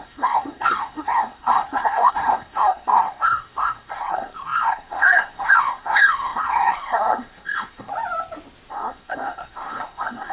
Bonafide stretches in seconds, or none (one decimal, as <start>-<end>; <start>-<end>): 7.9-8.7